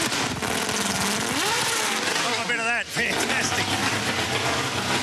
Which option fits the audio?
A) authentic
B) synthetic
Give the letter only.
A